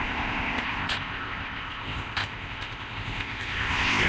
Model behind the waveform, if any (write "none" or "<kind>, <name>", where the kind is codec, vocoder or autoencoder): codec, ZipCodec